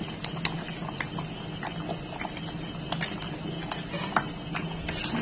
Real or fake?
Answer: real